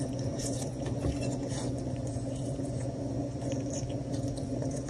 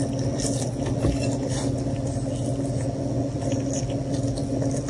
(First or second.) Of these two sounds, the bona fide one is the second